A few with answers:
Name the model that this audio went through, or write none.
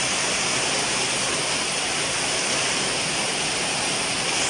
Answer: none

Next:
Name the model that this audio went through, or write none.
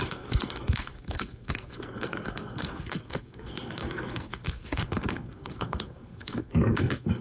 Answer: codec, SNAC